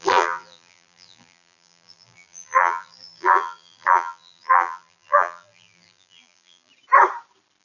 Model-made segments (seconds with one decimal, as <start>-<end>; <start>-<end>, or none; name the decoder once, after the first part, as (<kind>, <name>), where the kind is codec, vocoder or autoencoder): 0.0-6.7 (vocoder, BigVGAN v2)